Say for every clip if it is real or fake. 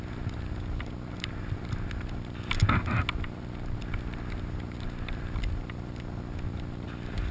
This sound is real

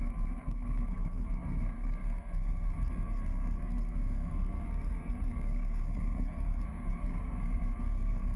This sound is fake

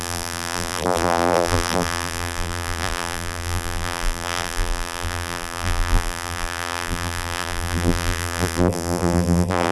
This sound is fake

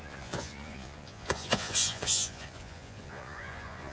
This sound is fake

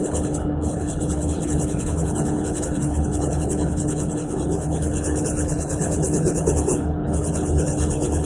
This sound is fake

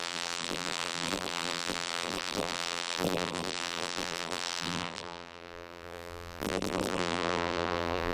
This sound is fake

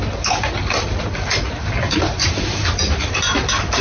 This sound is real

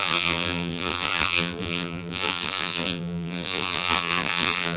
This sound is fake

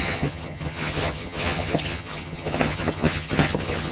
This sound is fake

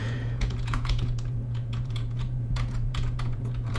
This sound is fake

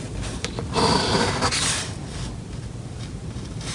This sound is fake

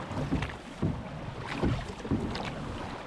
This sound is real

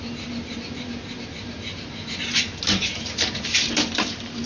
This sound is fake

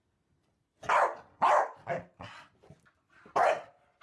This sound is real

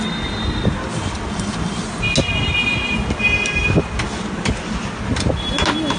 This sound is real